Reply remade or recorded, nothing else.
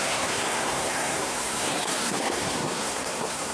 remade